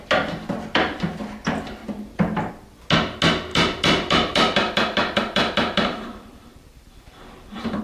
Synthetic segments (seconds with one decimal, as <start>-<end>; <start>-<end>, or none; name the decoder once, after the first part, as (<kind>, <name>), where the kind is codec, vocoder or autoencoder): 1.8-2.5 (vocoder, BigVGAN v2); 3.5-7.8

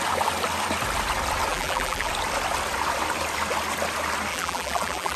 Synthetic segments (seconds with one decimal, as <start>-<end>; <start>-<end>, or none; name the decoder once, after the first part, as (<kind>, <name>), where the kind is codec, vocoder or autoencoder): 1.5-2.1 (vocoder, BigVGAN v2); 4.3-5.2

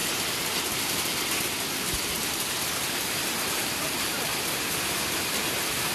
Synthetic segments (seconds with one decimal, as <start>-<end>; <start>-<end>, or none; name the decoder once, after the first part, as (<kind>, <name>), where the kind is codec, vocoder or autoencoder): 3.5-4.3 (vocoder, BigVGAN v2); 4.9-5.9